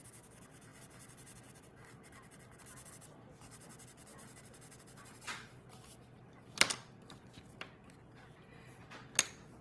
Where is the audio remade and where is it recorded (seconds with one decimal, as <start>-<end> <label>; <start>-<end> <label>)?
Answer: 0.0-9.6 recorded